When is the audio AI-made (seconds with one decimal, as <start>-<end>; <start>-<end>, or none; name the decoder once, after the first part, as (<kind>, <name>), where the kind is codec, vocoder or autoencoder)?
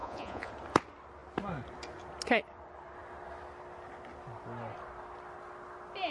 0.0-0.5 (vocoder, Vocos)